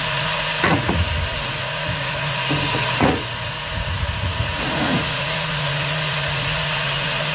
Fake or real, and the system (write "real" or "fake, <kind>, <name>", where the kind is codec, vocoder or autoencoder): fake, vocoder, Vocos